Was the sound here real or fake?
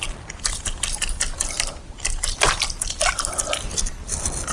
real